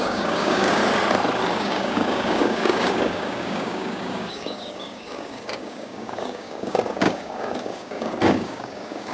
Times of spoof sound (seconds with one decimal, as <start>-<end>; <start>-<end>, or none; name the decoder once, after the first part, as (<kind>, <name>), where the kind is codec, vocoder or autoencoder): 0.0-0.8 (codec, DAC); 1.5-9.1